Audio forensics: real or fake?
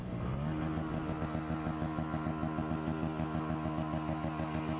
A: real